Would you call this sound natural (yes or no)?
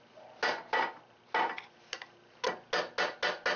yes